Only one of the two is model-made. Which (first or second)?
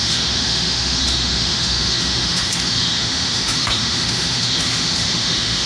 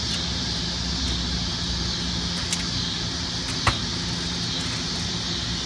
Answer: first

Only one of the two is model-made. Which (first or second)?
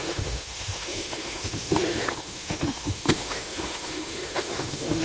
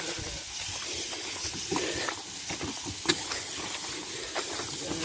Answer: first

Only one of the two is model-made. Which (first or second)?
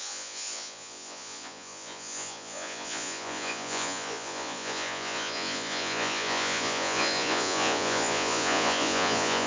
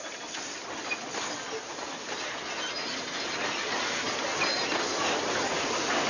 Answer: first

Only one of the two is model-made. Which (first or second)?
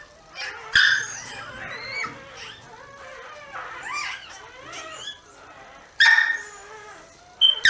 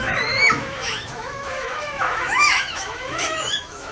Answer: second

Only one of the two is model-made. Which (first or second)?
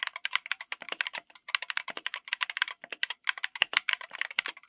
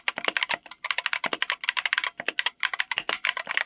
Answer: first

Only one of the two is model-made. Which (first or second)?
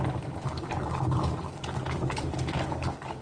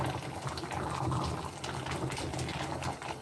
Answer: first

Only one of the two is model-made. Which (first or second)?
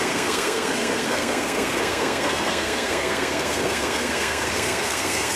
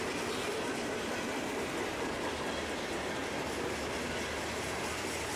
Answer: first